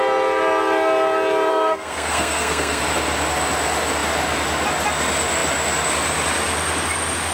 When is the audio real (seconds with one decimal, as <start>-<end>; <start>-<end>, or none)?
0.0-1.5; 2.8-7.3